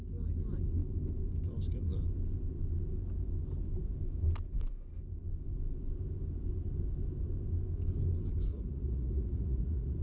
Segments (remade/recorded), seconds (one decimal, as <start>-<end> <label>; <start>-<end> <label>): 0.0-8.5 recorded; 8.5-10.0 remade